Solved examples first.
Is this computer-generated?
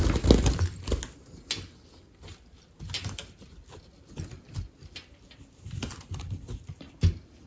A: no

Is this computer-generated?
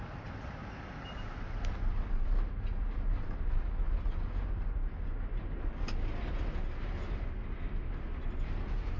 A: no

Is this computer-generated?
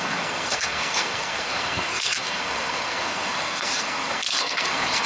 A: yes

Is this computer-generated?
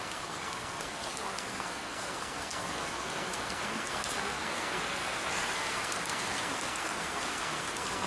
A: yes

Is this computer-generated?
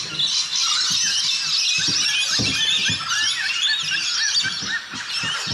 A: no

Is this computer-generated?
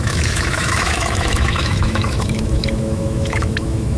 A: yes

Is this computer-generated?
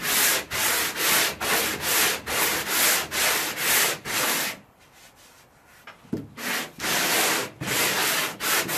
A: no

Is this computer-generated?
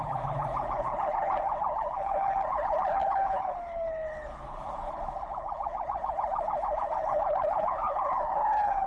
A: yes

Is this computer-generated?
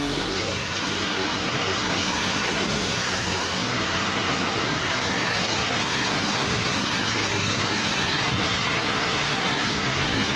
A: yes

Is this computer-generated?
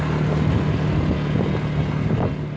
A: no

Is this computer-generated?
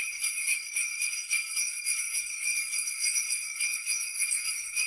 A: yes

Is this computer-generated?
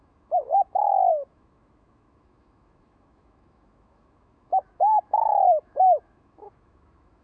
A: yes